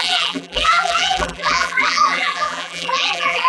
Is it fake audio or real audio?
fake